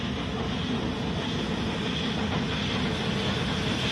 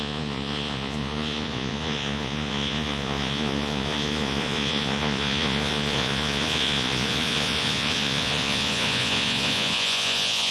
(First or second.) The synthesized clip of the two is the second